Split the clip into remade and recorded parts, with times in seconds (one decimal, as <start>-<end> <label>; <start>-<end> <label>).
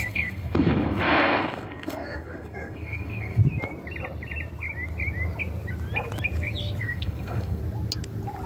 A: 0.0-3.4 remade; 3.4-6.8 recorded; 6.8-7.6 remade; 7.6-8.5 recorded